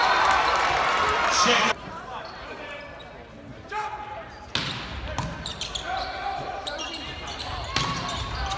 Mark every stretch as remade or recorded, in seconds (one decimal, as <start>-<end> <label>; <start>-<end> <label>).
0.0-2.8 remade; 2.8-3.5 recorded; 3.5-4.4 remade; 4.4-5.5 recorded; 5.5-7.5 remade; 7.5-8.6 recorded